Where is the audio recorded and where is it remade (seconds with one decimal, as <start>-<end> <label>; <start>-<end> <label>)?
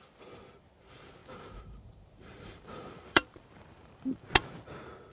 0.0-1.2 recorded; 1.2-4.3 remade; 4.3-5.1 recorded